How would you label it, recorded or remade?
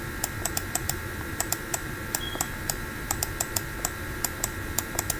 remade